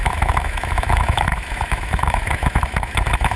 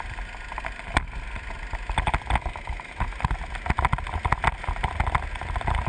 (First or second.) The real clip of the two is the second